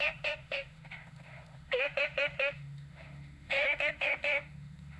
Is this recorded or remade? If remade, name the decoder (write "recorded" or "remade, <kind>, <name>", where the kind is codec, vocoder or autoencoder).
remade, autoencoder, DAC-VAE